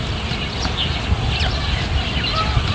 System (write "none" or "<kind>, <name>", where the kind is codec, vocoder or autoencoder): none